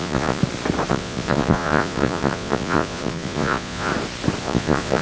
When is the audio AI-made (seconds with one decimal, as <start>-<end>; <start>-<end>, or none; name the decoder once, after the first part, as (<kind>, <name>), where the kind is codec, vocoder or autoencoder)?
0.0-0.4 (vocoder, Vocos); 0.9-3.9; 4.4-5.0